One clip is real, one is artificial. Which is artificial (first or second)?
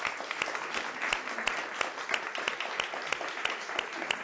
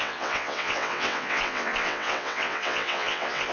second